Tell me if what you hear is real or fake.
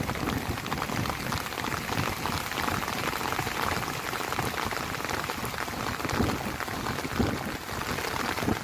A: real